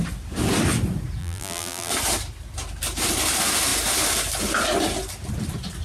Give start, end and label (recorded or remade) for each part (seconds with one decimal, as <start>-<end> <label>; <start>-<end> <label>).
0.0-1.2 recorded; 1.2-1.9 remade; 1.9-5.8 recorded